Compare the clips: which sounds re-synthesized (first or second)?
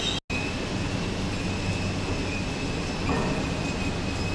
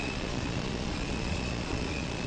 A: second